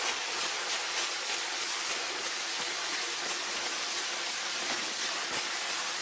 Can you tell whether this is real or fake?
real